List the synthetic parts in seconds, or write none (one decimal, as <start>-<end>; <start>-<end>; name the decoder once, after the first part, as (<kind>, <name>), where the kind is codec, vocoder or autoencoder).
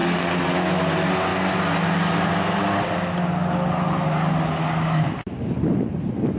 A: none